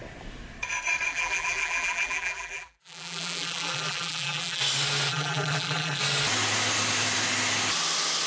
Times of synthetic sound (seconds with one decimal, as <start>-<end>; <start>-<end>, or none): 1.1-4.6; 5.1-6.0